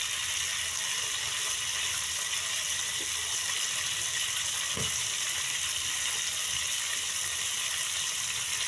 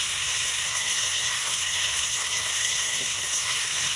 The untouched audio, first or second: first